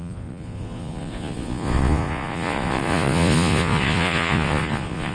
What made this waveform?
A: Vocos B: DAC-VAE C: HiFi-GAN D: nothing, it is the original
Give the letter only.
A